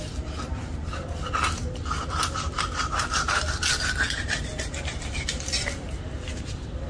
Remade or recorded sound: remade